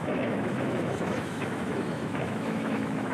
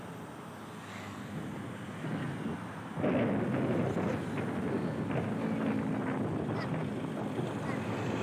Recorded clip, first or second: second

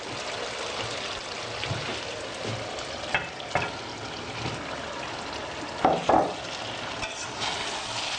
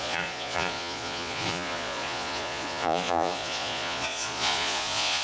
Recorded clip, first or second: first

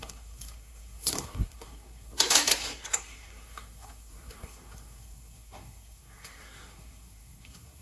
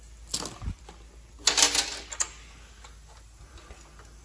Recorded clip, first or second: second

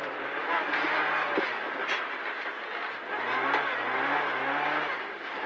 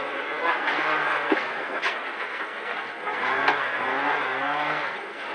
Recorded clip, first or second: first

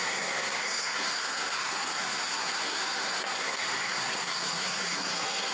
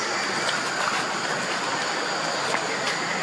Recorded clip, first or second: second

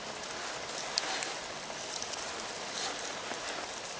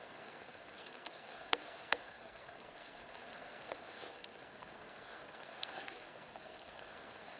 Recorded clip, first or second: first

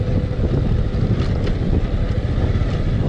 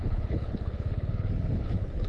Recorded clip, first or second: first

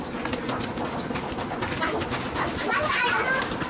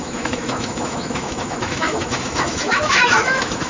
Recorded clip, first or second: first